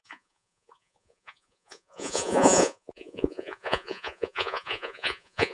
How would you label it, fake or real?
fake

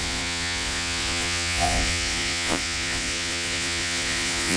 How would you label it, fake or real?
fake